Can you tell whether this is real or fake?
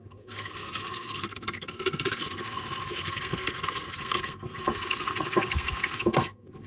fake